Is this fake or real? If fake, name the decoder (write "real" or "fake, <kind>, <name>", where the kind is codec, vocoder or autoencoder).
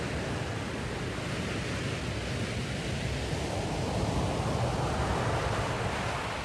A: real